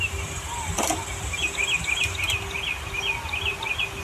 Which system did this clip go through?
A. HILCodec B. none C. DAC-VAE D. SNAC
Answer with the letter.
B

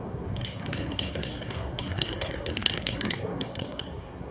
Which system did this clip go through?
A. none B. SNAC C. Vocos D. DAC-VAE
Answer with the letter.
B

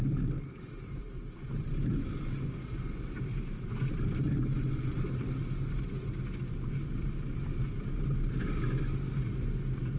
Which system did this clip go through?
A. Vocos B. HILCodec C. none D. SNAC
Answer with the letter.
C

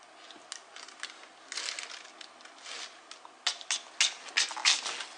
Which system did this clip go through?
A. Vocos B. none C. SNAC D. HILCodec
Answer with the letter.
B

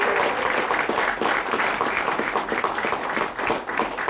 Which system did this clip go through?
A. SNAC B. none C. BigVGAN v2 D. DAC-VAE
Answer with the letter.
B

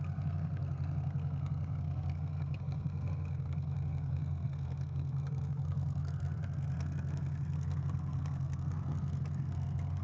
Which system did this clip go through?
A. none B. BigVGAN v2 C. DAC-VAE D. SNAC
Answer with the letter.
D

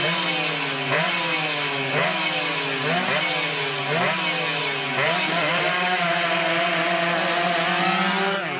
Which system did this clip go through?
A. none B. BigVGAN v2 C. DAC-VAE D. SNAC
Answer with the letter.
A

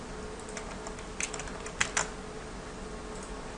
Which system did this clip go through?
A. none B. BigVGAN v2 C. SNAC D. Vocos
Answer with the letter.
A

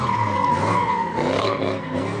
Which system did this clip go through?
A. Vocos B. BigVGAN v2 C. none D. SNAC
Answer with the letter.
D